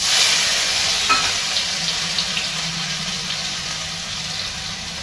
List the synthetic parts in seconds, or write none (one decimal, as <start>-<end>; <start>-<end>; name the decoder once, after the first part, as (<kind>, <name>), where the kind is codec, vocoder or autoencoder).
0.5-1.0 (vocoder, Vocos); 2.7-3.7